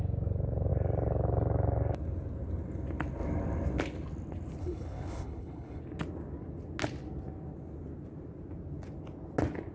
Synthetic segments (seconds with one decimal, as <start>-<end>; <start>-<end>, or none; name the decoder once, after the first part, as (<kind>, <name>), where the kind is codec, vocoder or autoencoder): 4.6-5.8 (codec, HILCodec)